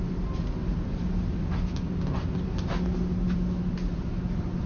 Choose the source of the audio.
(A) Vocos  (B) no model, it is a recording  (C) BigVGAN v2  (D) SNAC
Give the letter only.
B